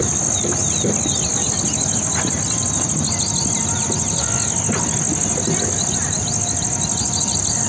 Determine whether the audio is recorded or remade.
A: recorded